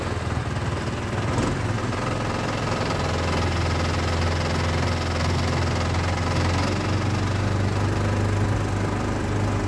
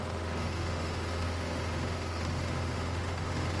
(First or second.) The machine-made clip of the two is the second